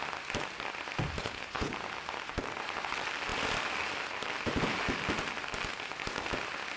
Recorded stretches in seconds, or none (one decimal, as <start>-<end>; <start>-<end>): 0.0-1.2; 1.7-6.8